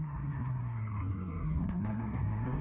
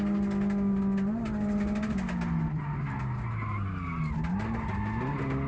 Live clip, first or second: second